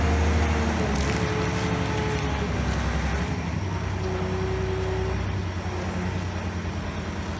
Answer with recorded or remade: recorded